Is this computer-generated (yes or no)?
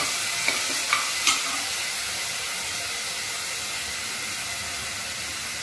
no